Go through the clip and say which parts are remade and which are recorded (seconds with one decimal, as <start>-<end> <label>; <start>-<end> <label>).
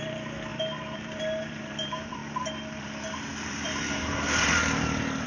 0.0-2.2 remade; 2.2-2.8 recorded; 2.8-5.3 remade